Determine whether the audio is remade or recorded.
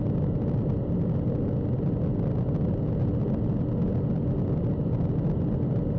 recorded